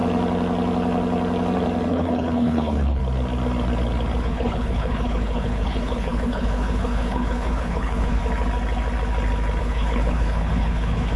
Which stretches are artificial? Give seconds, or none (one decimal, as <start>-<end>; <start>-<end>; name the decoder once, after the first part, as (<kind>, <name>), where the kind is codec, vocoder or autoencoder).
1.9-3.0 (codec, HILCodec); 4.2-8.2; 9.6-11.2